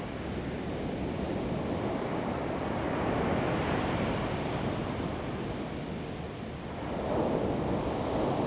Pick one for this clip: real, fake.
real